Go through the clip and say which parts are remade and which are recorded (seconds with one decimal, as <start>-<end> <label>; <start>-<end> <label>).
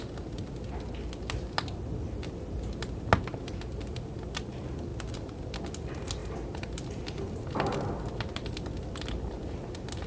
0.0-4.9 recorded; 4.9-5.5 remade; 5.5-6.2 recorded; 6.2-7.2 remade; 7.2-10.1 recorded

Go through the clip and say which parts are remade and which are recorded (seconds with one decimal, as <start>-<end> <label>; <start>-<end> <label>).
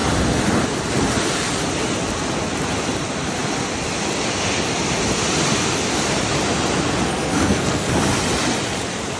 0.0-7.1 recorded; 7.1-7.9 remade; 7.9-9.2 recorded